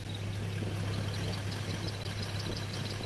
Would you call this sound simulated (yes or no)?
no